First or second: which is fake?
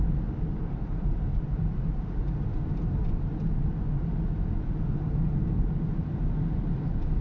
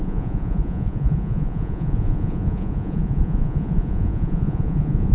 second